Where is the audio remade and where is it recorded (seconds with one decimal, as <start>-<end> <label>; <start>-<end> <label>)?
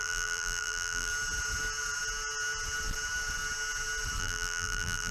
0.0-1.1 remade; 1.1-4.2 recorded; 4.2-5.1 remade